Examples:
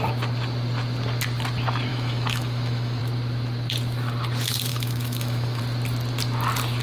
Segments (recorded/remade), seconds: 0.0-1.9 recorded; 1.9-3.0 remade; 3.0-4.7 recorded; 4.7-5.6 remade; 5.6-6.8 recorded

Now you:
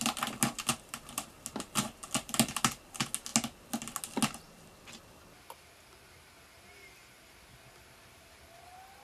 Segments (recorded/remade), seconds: 0.0-9.0 recorded

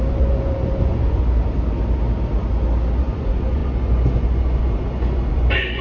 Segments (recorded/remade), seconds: 0.0-1.2 remade; 1.2-3.0 recorded; 3.0-5.8 remade

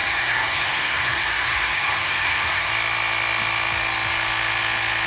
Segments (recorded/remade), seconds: 0.0-2.7 remade; 2.7-5.1 recorded

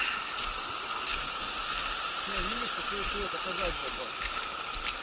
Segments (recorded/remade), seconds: 0.0-5.0 recorded

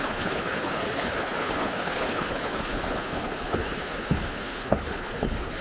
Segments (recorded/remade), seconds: 0.0-5.6 remade

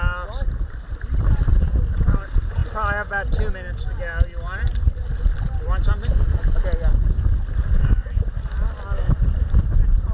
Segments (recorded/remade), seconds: 0.0-10.1 recorded